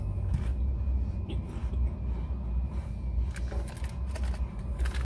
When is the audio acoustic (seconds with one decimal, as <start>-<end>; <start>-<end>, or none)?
0.0-5.0